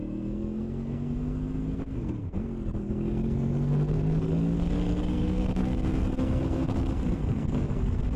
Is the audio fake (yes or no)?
yes